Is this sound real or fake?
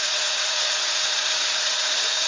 fake